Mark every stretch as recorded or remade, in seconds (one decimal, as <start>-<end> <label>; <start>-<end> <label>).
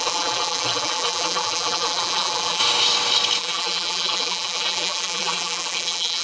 0.0-2.6 remade; 2.6-3.4 recorded; 3.4-6.2 remade